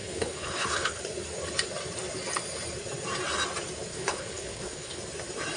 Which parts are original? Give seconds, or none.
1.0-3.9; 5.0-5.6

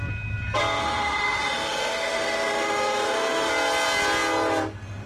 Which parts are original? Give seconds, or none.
0.0-0.8; 3.5-5.1

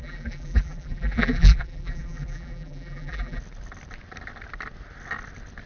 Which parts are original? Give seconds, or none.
3.4-5.7

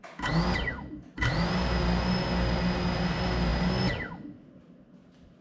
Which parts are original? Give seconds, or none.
0.0-5.4